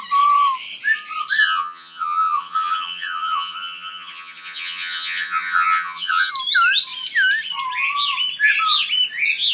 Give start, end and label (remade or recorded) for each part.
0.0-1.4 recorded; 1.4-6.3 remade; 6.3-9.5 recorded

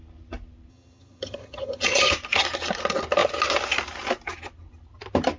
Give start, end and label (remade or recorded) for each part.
0.0-0.7 recorded; 0.7-2.1 remade; 2.1-5.4 recorded